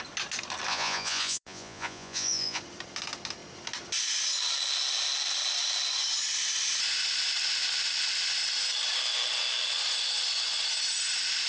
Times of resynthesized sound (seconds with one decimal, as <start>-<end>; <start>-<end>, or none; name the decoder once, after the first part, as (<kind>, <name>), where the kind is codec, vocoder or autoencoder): 0.7-2.6 (vocoder, Vocos)